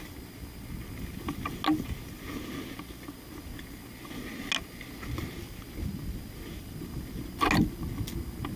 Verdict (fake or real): real